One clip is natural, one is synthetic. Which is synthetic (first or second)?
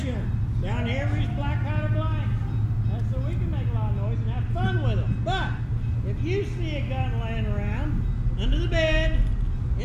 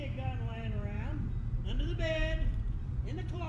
second